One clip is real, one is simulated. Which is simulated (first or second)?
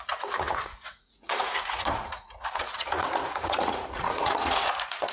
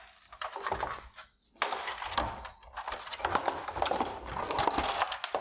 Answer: first